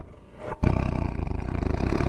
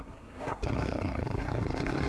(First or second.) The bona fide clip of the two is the first